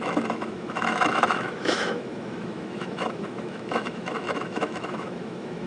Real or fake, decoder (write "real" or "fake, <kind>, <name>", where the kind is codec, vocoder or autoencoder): fake, autoencoder, DAC-VAE